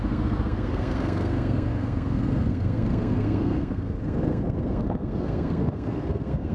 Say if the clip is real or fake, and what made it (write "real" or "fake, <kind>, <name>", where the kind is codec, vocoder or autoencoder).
fake, codec, SNAC